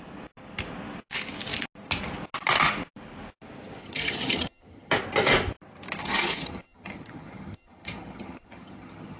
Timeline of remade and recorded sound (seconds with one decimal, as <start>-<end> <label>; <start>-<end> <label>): 0.0-3.8 recorded; 3.8-4.9 remade; 4.9-6.0 recorded; 6.0-9.2 remade